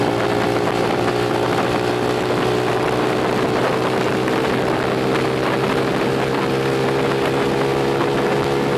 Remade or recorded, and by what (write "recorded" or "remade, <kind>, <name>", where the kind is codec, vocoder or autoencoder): recorded